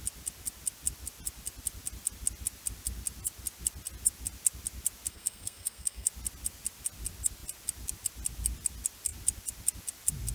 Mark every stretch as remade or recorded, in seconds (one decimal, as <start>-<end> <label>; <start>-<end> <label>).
0.0-5.1 recorded; 5.1-6.1 remade; 6.1-10.3 recorded